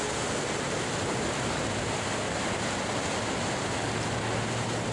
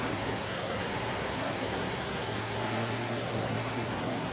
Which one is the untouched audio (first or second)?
first